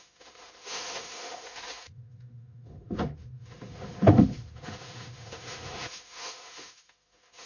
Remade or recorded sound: remade